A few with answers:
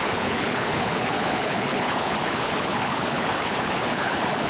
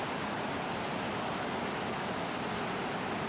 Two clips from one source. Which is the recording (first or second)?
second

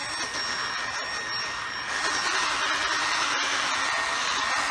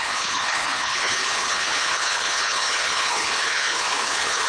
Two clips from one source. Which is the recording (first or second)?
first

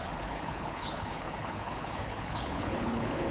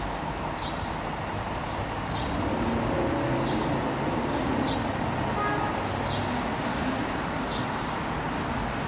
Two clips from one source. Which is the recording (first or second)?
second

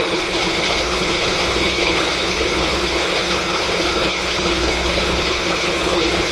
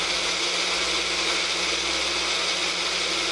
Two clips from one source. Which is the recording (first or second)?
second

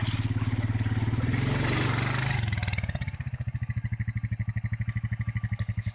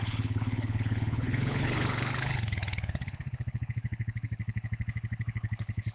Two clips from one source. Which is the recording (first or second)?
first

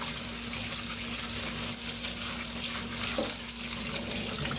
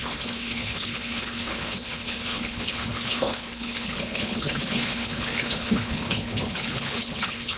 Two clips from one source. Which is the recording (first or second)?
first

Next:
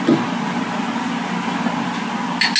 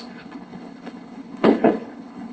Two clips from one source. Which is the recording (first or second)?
first